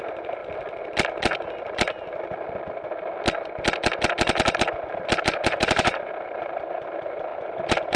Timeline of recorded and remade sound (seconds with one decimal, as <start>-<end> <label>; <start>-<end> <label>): 0.0-0.4 remade; 0.4-5.2 recorded; 5.2-8.0 remade